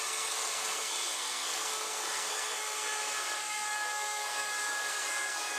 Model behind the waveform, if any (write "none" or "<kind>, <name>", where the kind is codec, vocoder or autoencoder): codec, SNAC